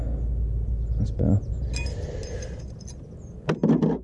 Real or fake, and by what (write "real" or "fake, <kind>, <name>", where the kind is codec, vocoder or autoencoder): real